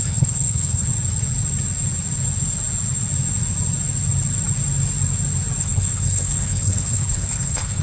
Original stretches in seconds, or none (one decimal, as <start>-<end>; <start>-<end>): 0.9-5.6